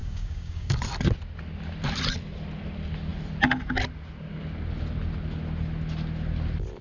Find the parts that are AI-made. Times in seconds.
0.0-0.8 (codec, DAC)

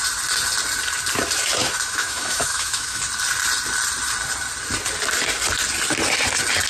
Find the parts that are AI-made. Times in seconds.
1.6-3.0 (autoencoder, DAC-VAE)

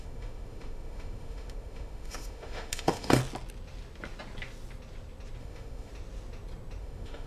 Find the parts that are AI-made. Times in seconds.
0.0-3.2 (autoencoder, DAC-VAE); 5.4-5.9; 6.8-7.3